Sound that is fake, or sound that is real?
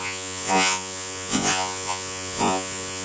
fake